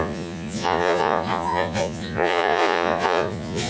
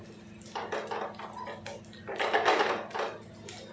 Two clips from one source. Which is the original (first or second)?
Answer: second